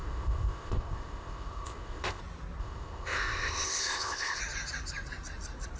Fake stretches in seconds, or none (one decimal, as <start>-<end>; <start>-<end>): 0.0-2.2; 2.6-4.4